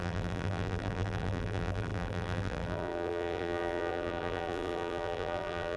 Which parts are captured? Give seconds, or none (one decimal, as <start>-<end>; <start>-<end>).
none